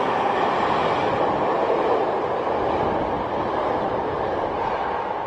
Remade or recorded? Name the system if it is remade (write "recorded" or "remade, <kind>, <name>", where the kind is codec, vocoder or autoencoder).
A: recorded